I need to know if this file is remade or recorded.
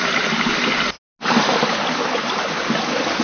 recorded